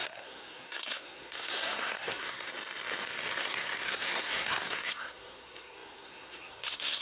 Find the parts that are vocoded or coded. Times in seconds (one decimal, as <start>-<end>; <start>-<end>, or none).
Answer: 0.0-2.5; 3.3-7.0